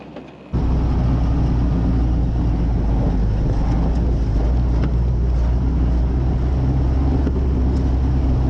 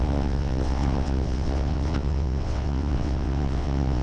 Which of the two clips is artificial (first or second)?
second